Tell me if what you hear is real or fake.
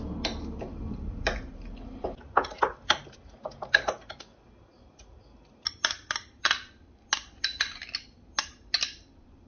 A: real